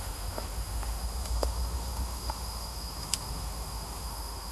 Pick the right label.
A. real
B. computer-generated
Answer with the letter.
B